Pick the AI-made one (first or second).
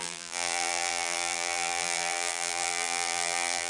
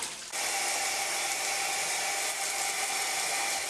first